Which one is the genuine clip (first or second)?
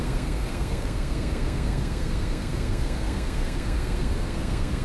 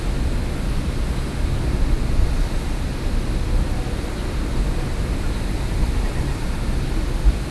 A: second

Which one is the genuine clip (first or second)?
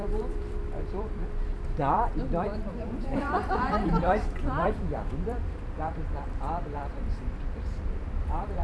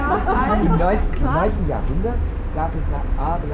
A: second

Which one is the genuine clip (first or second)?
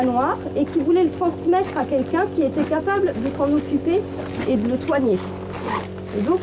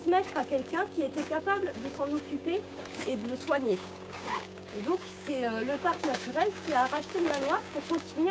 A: first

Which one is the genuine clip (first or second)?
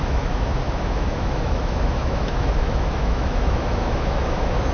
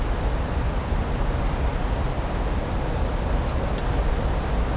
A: second